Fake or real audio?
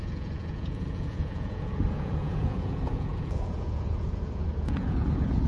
fake